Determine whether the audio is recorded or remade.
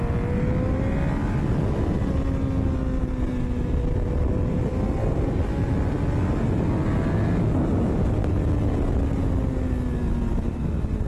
recorded